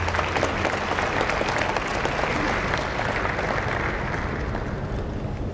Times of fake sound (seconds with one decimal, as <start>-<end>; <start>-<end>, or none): none